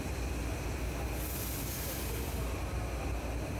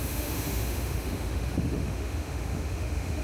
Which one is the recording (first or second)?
first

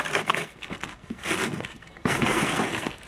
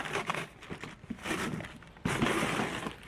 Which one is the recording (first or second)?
second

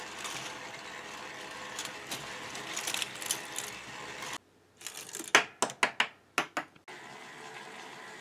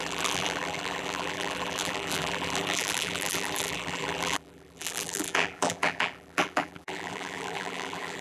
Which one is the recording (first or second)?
first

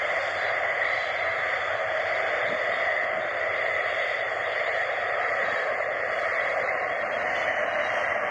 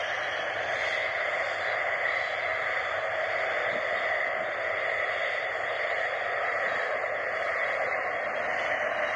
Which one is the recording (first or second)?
second